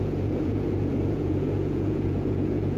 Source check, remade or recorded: remade